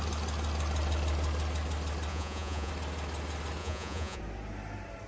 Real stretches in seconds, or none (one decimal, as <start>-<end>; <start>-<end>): 0.0-2.1; 2.7-3.6; 4.2-5.1